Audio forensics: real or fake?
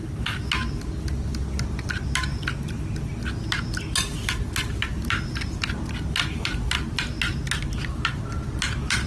real